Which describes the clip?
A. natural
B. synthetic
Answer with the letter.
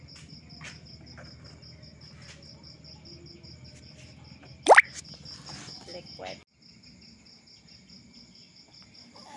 A